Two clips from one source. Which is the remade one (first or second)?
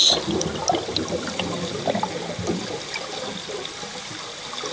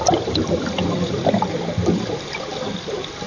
second